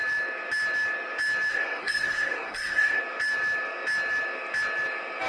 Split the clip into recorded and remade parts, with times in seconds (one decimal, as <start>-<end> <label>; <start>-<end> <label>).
0.0-1.5 recorded; 1.5-3.0 remade; 3.0-5.3 recorded